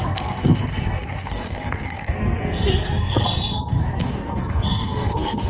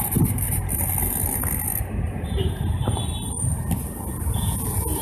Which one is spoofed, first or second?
first